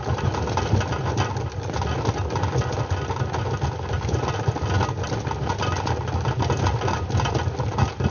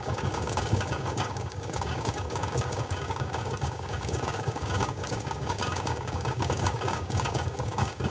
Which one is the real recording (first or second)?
first